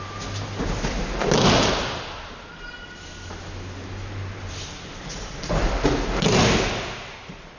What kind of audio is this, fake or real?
real